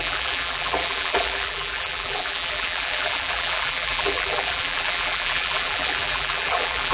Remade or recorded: remade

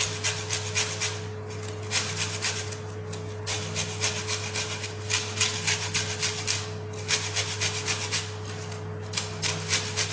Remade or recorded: recorded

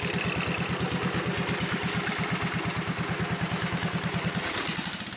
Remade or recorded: recorded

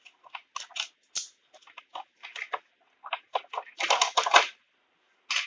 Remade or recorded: recorded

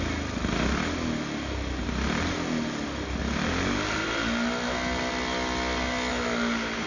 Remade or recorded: recorded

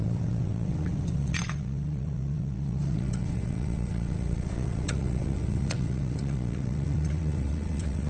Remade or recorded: remade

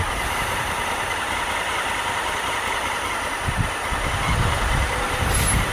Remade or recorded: recorded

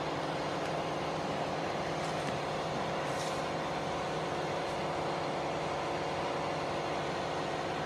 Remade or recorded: recorded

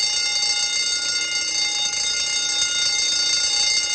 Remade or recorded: recorded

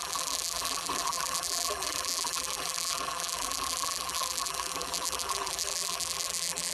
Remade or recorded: remade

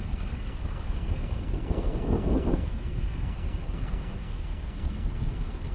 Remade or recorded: remade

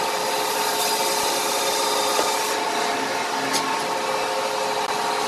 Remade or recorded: recorded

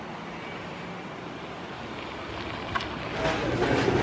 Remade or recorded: recorded